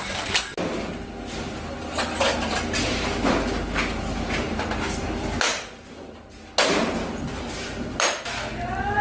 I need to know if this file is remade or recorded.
recorded